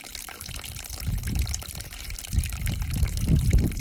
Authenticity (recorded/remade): recorded